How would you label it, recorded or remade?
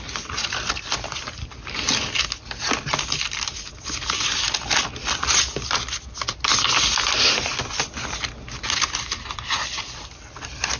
recorded